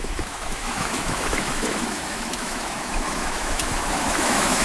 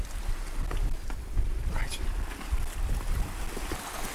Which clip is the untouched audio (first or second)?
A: second